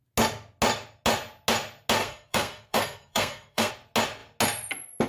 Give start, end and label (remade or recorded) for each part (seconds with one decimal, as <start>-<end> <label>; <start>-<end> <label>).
0.0-2.0 recorded; 2.0-3.7 remade; 3.7-5.1 recorded